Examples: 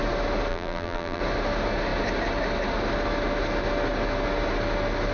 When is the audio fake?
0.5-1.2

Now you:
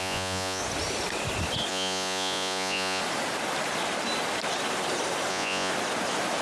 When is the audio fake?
0.0-0.6; 1.7-3.0; 5.3-5.7

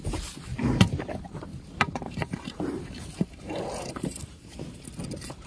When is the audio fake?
1.5-4.6

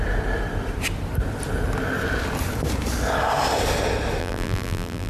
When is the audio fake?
4.2-5.1

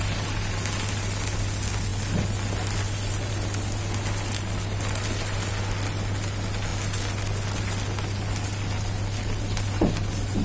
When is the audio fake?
none

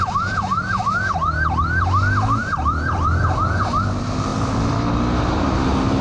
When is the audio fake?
0.0-6.0

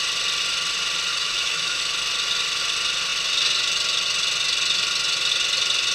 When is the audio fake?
1.1-1.8